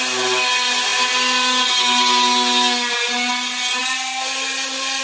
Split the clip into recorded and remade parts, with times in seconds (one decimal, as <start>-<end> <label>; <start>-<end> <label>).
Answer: 0.0-5.0 recorded